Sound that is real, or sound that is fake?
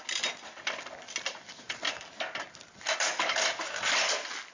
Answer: real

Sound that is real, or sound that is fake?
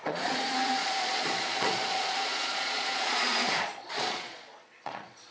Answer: fake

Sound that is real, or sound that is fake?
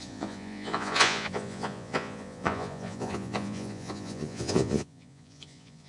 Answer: fake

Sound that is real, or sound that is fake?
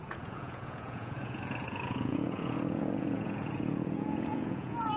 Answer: fake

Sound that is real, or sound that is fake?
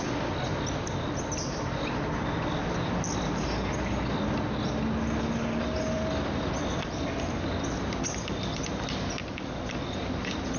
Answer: real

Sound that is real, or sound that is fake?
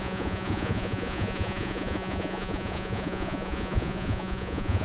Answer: fake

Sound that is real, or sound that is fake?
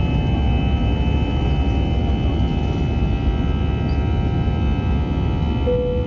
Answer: real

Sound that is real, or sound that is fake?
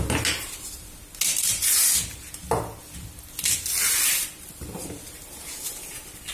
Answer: real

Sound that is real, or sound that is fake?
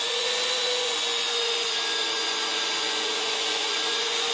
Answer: fake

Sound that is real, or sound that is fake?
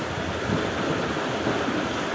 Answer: real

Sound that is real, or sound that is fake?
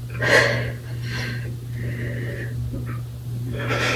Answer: real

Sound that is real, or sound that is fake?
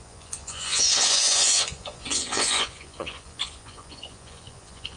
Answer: fake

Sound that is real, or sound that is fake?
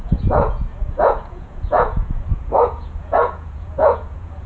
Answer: fake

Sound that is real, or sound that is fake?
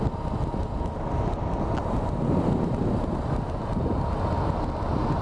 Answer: real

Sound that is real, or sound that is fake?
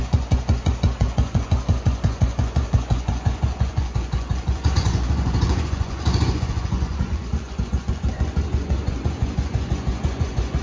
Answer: fake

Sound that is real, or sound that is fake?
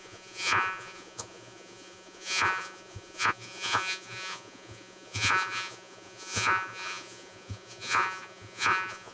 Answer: fake